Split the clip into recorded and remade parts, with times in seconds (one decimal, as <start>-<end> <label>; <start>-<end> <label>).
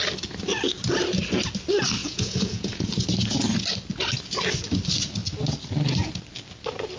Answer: 0.0-2.0 recorded; 2.0-2.9 remade; 2.9-7.0 recorded